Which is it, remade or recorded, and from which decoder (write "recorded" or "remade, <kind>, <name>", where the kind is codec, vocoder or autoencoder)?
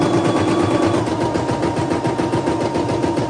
recorded